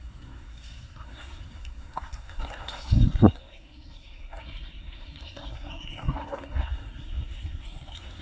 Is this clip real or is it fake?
fake